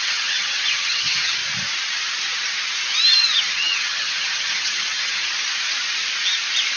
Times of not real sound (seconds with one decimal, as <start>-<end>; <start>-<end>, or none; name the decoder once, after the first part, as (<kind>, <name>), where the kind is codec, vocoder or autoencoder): 0.0-1.4 (vocoder, HiFi-GAN); 3.4-5.3